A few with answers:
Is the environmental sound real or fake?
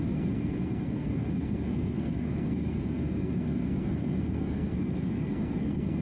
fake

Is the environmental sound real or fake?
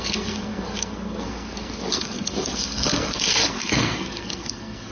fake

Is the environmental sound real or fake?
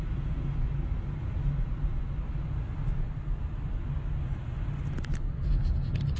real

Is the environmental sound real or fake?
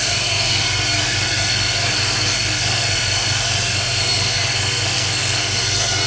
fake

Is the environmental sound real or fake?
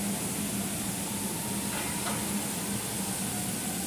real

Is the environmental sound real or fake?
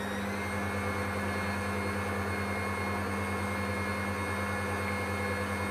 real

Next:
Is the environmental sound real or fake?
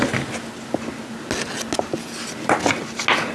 real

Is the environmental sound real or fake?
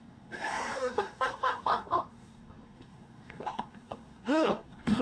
fake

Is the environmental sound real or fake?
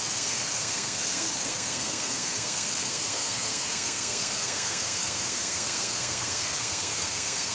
fake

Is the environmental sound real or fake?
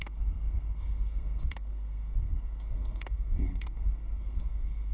fake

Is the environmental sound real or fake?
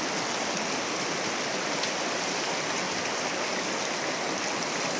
real